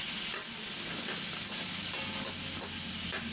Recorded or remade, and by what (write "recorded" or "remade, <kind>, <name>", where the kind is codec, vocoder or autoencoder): recorded